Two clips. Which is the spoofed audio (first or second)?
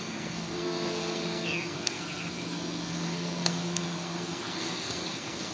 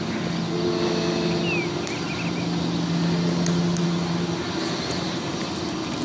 first